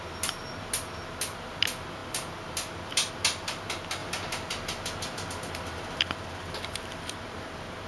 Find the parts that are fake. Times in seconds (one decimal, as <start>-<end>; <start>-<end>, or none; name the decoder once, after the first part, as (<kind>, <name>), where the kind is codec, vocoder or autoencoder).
none

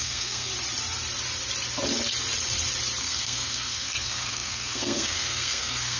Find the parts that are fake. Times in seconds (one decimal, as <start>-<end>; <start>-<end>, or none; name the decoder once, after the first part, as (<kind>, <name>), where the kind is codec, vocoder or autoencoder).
0.0-0.5 (codec, SNAC); 3.0-6.0

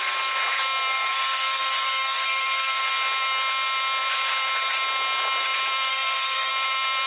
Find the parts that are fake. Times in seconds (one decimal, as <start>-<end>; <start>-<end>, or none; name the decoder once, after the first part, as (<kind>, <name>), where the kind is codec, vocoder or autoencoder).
0.9-2.8 (codec, SNAC); 5.9-6.5